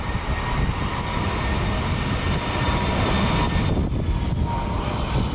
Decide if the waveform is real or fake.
real